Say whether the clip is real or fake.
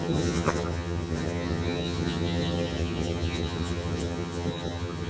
fake